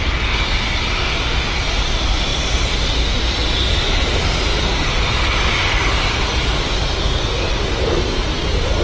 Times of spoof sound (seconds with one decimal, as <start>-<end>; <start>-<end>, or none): none